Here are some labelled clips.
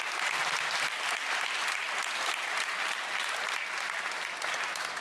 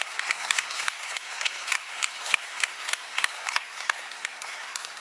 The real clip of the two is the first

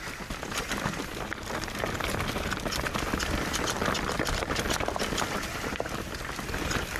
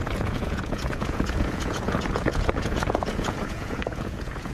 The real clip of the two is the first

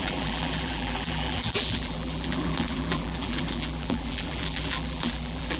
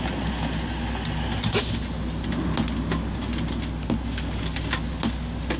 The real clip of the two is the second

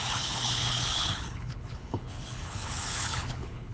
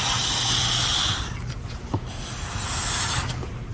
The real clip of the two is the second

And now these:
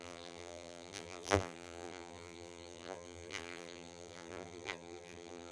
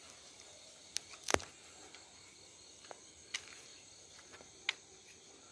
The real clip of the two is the second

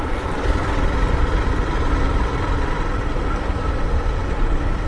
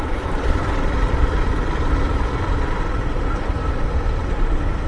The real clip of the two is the first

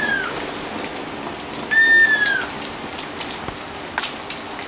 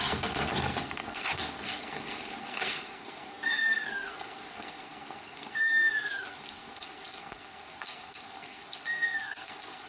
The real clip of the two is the first